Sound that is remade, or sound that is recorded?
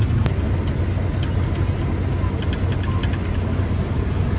recorded